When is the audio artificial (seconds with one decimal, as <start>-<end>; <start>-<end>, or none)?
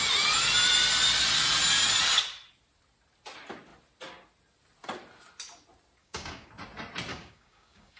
6.0-6.5; 7.1-8.0